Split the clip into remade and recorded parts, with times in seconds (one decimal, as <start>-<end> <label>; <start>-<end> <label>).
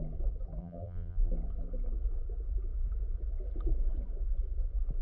0.0-0.6 recorded; 0.6-1.3 remade; 1.3-5.0 recorded